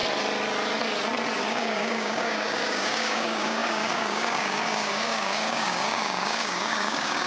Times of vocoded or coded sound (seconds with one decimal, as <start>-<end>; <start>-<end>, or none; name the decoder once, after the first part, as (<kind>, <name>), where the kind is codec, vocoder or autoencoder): 1.5-7.3 (codec, DAC)